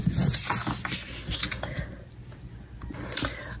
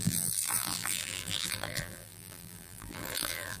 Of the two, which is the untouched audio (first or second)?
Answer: first